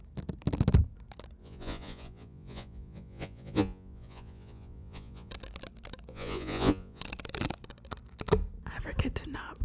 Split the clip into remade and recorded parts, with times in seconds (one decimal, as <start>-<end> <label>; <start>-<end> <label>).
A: 0.0-1.4 recorded; 1.4-5.3 remade; 5.3-6.1 recorded; 6.1-7.0 remade; 7.0-9.6 recorded